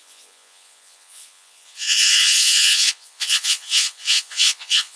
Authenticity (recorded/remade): remade